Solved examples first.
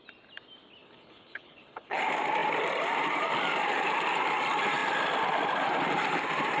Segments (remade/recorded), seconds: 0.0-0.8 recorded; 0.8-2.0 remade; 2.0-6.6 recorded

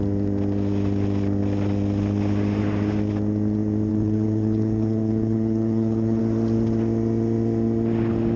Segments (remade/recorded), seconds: 0.0-3.9 recorded; 3.9-6.2 remade; 6.2-8.4 recorded

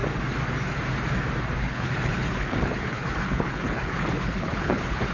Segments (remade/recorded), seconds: 0.0-1.6 recorded; 1.6-5.1 remade

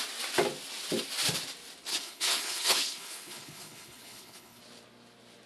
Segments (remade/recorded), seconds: 0.0-1.9 recorded; 1.9-4.6 remade; 4.6-5.5 recorded

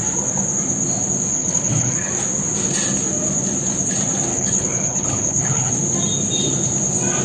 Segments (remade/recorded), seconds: 0.0-1.3 recorded; 1.3-2.1 remade; 2.1-4.3 recorded; 4.3-5.7 remade; 5.7-7.2 recorded

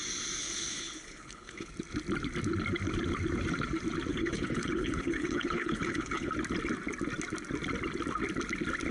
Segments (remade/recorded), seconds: 0.0-0.4 recorded; 0.4-1.7 remade; 1.7-4.1 recorded; 4.1-6.3 remade; 6.3-8.9 recorded